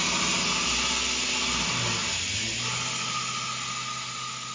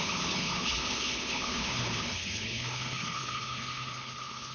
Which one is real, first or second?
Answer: first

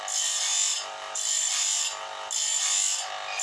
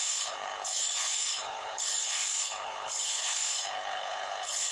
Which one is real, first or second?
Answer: first